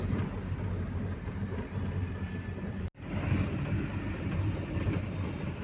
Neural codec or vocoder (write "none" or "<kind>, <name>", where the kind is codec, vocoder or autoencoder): none